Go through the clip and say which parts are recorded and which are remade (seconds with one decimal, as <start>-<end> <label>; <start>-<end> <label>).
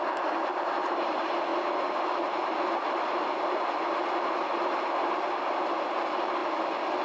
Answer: 0.0-1.5 remade; 1.5-5.7 recorded; 5.7-6.4 remade; 6.4-7.0 recorded